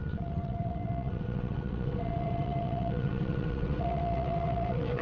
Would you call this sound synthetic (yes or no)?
yes